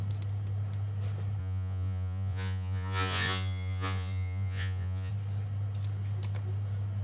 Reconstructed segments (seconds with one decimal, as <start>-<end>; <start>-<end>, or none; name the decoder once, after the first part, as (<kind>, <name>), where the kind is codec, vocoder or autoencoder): 1.4-5.1 (vocoder, Vocos)